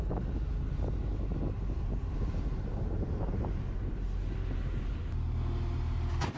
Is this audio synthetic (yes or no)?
no